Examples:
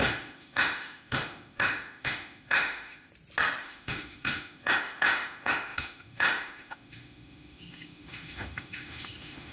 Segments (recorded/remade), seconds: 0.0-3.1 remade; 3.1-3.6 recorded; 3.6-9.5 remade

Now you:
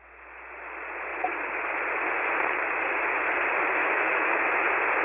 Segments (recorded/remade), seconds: 0.0-3.8 recorded; 3.8-4.4 remade; 4.4-5.0 recorded